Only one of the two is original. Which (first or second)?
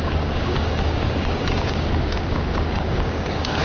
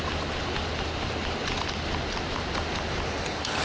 second